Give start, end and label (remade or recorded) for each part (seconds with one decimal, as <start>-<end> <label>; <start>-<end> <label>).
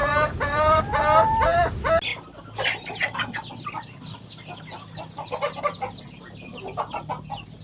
0.0-0.8 remade; 0.8-2.1 recorded; 2.1-5.6 remade; 5.6-7.6 recorded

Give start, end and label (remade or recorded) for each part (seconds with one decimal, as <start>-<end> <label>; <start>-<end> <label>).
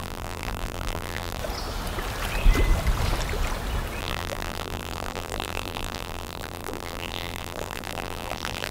0.0-1.4 remade; 1.4-4.0 recorded; 4.0-8.7 remade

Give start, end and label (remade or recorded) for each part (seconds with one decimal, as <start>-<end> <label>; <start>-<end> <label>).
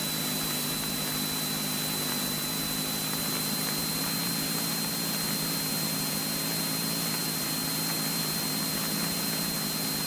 0.0-10.1 recorded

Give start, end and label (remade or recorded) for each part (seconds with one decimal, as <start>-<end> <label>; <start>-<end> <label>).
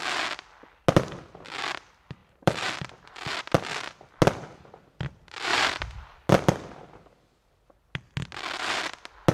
0.0-2.2 recorded; 2.2-3.4 remade; 3.4-5.5 recorded; 5.5-6.3 remade; 6.3-9.3 recorded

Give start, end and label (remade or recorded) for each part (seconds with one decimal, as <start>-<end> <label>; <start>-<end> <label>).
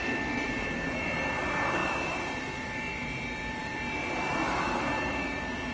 0.0-5.7 remade